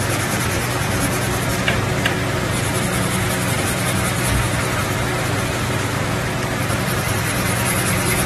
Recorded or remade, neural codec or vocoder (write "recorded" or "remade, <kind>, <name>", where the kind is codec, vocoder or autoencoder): recorded